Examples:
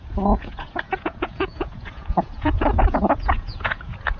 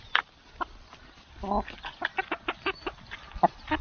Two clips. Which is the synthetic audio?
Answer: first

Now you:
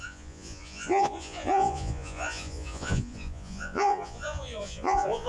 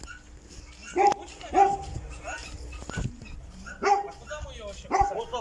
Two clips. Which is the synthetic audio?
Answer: first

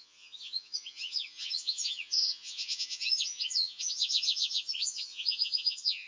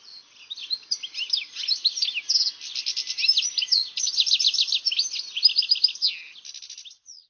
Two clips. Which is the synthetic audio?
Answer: first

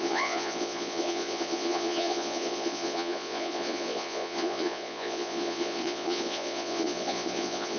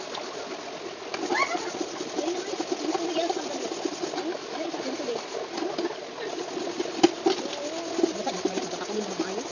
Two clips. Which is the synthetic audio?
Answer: first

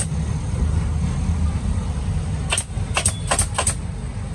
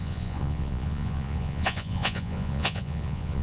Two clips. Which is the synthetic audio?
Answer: second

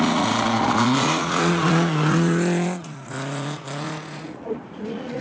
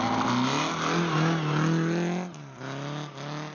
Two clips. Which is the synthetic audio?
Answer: first